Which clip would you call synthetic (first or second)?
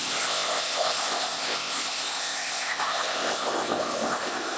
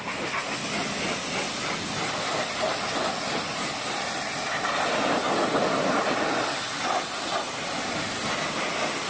first